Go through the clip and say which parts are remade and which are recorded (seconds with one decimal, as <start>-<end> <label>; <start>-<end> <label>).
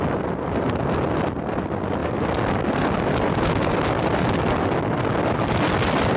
0.0-6.2 recorded